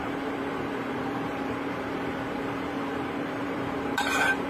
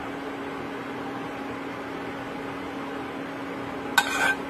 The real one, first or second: second